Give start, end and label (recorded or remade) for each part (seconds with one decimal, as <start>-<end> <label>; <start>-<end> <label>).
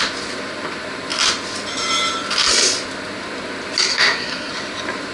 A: 0.0-3.9 recorded; 3.9-4.5 remade; 4.5-5.1 recorded